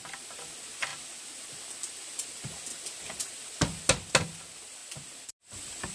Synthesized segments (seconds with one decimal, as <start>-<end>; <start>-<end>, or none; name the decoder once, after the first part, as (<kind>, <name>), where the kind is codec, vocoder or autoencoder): none